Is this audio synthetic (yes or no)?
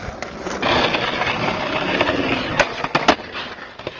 no